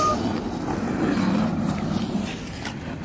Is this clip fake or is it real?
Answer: real